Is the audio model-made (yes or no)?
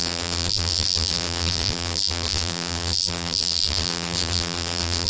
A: yes